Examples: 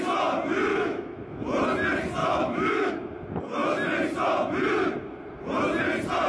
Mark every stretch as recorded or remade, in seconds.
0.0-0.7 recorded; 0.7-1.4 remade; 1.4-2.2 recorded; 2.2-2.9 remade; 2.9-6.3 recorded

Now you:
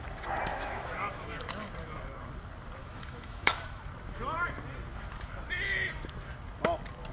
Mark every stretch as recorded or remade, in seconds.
0.0-0.5 recorded; 0.5-1.5 remade; 1.5-2.8 recorded; 2.8-3.8 remade; 3.8-7.1 recorded

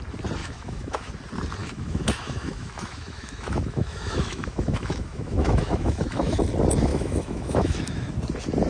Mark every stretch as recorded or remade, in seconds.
0.0-0.4 recorded; 0.4-1.1 remade; 1.1-1.6 recorded; 1.6-6.4 remade; 6.4-6.9 recorded; 6.9-8.1 remade; 8.1-8.7 recorded

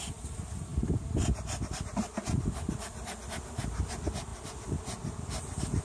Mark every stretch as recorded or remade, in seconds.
0.0-5.8 recorded

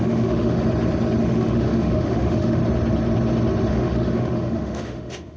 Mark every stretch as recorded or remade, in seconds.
0.0-0.6 remade; 0.6-1.2 recorded; 1.2-2.6 remade; 2.6-3.7 recorded; 3.7-5.4 remade

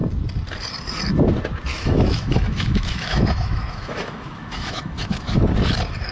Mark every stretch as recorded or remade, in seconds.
0.0-1.7 recorded; 1.7-5.4 remade; 5.4-6.1 recorded